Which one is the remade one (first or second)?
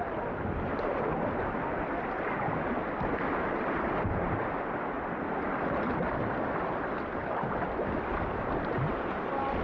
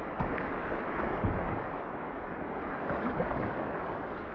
second